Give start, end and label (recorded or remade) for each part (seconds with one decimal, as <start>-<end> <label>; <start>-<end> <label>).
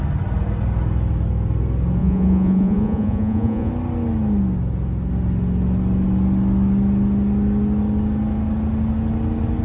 0.0-2.0 recorded; 2.0-3.7 remade; 3.7-9.6 recorded